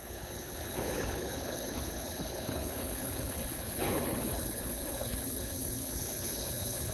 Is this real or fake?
fake